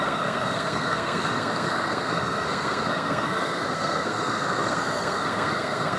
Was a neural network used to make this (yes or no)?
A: yes